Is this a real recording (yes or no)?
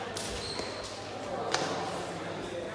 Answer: yes